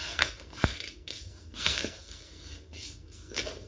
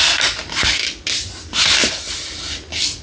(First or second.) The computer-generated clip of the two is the first